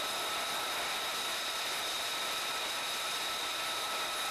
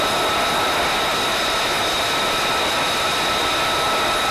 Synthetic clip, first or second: first